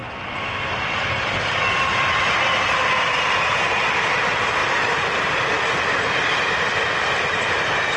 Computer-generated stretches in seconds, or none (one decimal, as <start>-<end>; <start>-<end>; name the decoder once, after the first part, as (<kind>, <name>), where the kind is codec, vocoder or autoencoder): 2.0-4.6 (vocoder, BigVGAN v2); 6.9-8.0